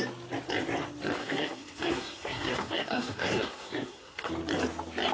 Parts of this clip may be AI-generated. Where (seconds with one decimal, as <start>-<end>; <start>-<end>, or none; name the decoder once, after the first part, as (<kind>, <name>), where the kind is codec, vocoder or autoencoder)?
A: 1.2-4.3 (codec, SNAC)